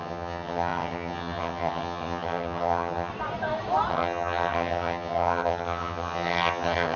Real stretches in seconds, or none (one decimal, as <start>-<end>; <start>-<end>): 3.1-3.9